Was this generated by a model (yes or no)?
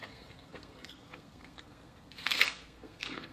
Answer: yes